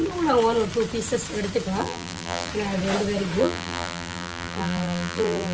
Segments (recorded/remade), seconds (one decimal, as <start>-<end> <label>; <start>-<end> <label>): 0.0-1.8 recorded; 1.8-2.5 remade; 2.5-3.4 recorded; 3.4-5.5 remade